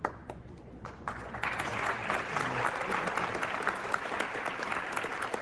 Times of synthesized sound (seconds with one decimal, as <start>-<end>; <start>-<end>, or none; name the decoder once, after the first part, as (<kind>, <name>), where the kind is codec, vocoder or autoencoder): 0.0-2.0 (vocoder, Vocos)